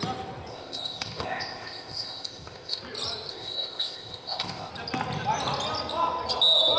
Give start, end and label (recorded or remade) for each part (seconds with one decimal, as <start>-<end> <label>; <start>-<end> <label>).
0.0-0.5 recorded; 0.5-2.8 remade; 2.8-3.3 recorded; 3.3-4.7 remade; 4.7-6.8 recorded